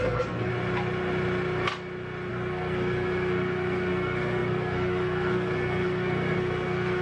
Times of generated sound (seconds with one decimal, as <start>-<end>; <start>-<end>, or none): 0.0-0.5; 2.3-7.0